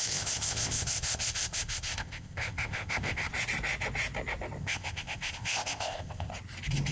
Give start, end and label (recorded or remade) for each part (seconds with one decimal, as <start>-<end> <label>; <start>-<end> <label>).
0.0-3.3 remade; 3.3-4.6 recorded; 4.6-6.3 remade; 6.3-6.9 recorded